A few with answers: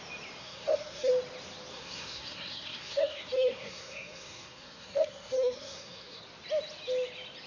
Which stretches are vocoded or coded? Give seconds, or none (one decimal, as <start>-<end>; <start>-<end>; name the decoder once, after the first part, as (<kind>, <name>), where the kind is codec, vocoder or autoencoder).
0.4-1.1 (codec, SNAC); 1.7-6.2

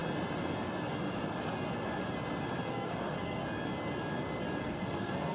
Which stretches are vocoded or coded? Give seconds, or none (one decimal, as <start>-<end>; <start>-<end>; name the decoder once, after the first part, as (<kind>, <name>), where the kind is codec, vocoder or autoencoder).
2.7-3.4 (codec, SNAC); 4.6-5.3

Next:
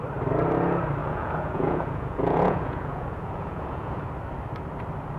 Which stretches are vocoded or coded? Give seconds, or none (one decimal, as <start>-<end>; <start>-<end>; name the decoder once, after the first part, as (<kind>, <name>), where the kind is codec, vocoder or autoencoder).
1.0-4.0 (vocoder, Vocos)